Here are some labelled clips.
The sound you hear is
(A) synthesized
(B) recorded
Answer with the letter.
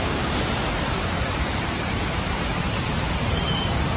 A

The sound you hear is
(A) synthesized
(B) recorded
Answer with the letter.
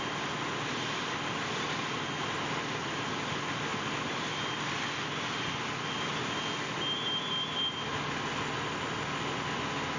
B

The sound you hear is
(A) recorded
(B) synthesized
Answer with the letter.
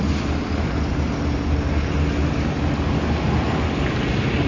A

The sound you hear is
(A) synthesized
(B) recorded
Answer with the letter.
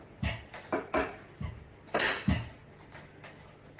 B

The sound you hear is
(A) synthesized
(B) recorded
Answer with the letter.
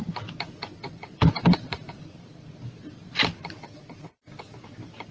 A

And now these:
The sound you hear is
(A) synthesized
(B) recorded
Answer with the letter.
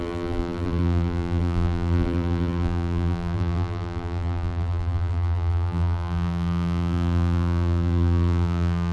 A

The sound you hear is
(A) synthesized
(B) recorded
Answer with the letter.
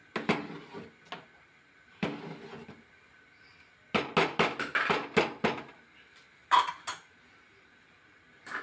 B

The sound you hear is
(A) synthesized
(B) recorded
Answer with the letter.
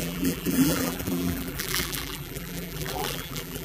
A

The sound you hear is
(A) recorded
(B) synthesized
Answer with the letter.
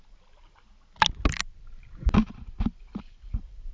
A